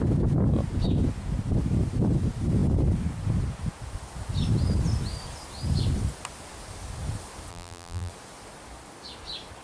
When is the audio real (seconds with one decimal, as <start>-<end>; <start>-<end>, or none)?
0.0-7.5; 8.1-9.6